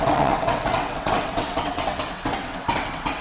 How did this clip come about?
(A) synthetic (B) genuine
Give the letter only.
A